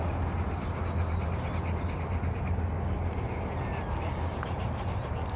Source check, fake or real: real